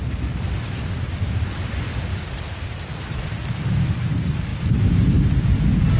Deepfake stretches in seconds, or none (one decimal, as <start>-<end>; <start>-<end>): 2.1-4.1